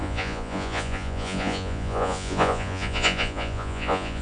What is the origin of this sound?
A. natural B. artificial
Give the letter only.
B